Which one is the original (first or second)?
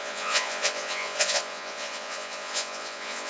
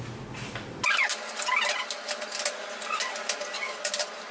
second